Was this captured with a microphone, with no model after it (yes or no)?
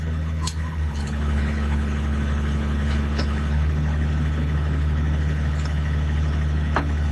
no